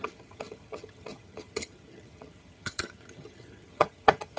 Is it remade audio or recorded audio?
remade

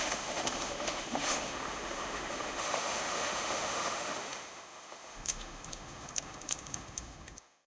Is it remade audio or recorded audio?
remade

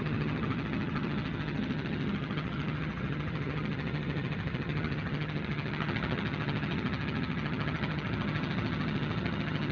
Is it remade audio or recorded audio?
remade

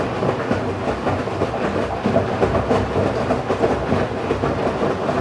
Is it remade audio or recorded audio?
recorded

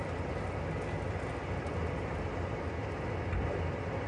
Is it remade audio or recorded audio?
recorded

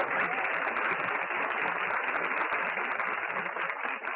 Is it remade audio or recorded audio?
recorded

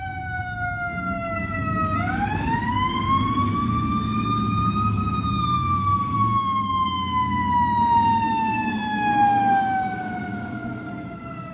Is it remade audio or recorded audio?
remade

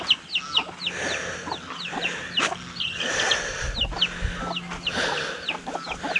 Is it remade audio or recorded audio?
recorded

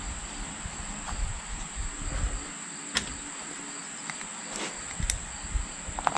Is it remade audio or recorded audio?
recorded